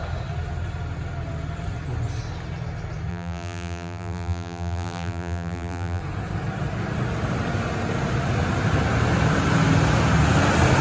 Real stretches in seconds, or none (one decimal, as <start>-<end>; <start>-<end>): 0.0-3.1; 6.0-10.8